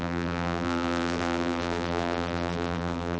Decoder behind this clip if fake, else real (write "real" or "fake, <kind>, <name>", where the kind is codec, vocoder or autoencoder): fake, vocoder, BigVGAN v2